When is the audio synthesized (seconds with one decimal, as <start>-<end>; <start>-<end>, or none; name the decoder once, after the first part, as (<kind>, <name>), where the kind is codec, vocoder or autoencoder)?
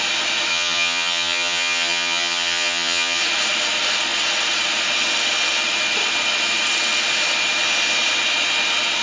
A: 0.5-3.2 (vocoder, HiFi-GAN)